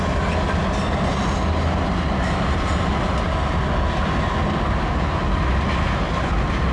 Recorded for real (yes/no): yes